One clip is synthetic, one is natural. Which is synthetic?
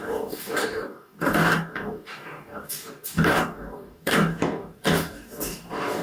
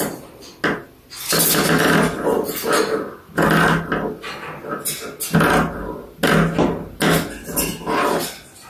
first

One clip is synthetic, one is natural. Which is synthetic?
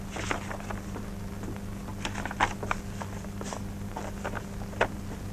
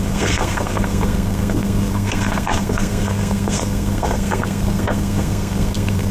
second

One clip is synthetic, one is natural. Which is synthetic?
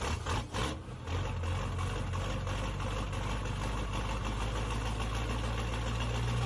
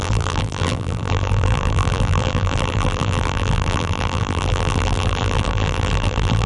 second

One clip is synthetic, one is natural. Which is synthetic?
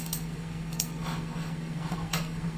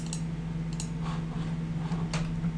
first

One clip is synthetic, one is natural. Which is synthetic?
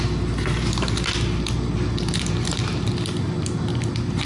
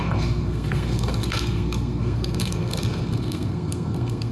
second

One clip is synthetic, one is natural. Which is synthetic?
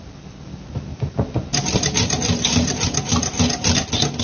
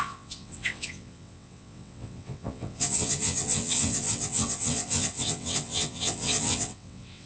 second